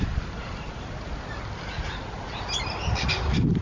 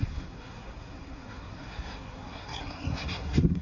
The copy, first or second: second